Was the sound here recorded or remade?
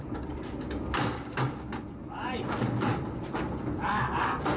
remade